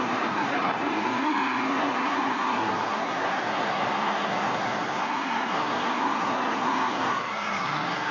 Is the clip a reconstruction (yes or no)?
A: yes